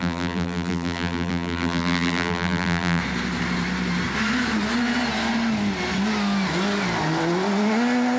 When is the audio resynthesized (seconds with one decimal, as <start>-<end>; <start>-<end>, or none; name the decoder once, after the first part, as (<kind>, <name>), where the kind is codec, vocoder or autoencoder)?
0.0-3.0 (vocoder, BigVGAN v2)